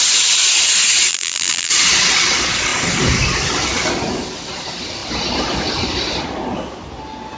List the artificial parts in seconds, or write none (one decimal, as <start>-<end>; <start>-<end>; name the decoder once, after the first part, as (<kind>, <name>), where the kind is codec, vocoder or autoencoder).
1.1-1.7 (vocoder, BigVGAN v2)